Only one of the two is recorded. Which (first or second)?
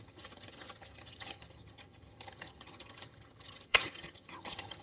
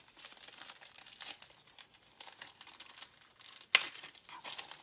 second